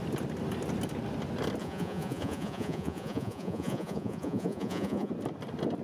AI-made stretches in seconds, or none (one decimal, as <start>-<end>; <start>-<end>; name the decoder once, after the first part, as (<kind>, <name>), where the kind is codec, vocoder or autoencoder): 1.6-5.1 (vocoder, Vocos)